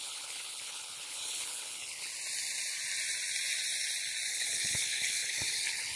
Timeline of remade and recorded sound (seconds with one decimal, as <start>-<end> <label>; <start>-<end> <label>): 0.0-2.1 remade; 2.1-4.3 recorded; 4.3-6.0 remade